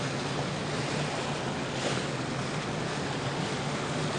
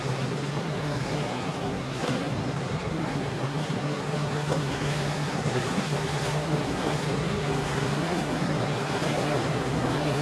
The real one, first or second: first